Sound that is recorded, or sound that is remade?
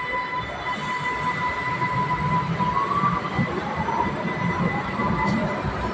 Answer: recorded